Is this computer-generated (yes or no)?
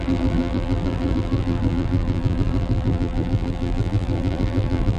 yes